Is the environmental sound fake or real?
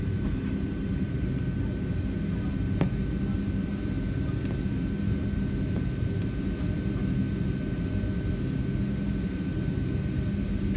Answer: real